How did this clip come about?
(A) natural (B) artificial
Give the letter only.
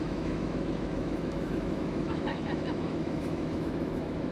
B